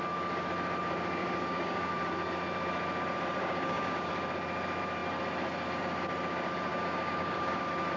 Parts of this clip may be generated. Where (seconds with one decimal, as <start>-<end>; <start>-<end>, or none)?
1.2-1.9; 3.4-4.1; 6.7-7.6